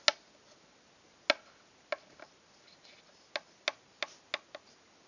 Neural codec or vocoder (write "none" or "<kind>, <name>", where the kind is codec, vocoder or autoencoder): none